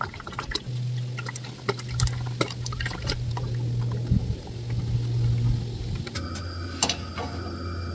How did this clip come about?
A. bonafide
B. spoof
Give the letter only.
A